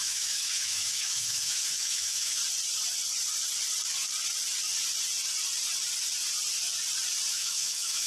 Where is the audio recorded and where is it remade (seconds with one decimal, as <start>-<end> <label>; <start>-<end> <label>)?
0.0-2.4 remade; 2.4-7.3 recorded; 7.3-8.1 remade

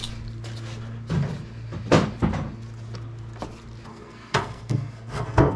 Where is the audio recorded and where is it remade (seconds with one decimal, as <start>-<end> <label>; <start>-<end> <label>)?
0.0-3.9 recorded; 3.9-5.6 remade

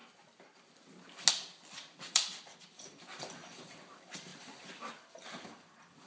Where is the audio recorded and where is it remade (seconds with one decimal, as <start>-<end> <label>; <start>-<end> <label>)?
0.0-1.3 recorded; 1.3-6.1 remade

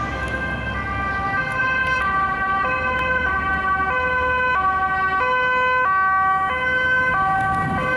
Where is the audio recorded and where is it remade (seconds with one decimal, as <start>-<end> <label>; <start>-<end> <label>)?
0.0-1.6 recorded; 1.6-3.5 remade; 3.5-8.0 recorded

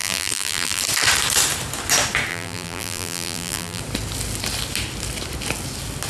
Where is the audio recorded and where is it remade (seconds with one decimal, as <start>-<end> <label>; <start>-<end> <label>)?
0.0-0.8 remade; 0.8-2.3 recorded; 2.3-3.8 remade; 3.8-6.1 recorded

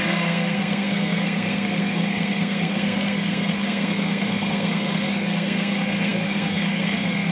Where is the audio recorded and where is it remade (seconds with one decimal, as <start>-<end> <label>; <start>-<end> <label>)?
0.0-7.3 remade